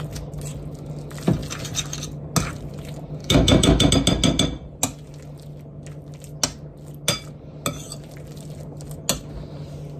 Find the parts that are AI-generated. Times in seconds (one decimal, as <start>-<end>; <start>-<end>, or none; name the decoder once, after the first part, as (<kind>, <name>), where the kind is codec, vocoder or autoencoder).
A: 3.2-3.9 (autoencoder, DAC-VAE)